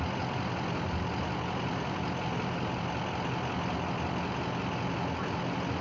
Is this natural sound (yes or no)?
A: yes